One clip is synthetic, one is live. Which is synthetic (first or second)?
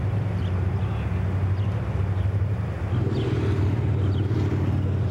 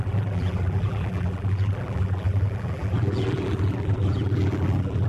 second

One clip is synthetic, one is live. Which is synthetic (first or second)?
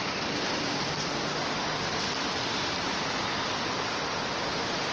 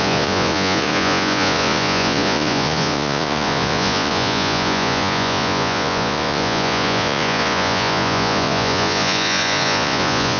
second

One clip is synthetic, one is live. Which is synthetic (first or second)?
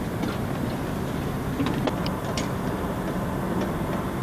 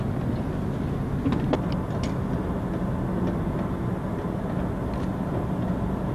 first